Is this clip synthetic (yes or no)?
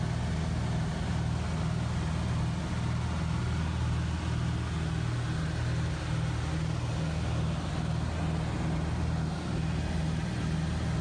no